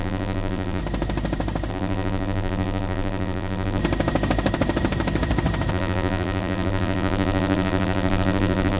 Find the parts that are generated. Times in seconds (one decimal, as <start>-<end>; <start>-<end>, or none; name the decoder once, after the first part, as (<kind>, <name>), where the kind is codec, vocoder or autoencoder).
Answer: 0.0-0.8 (vocoder, BigVGAN v2); 1.7-3.8; 5.7-8.8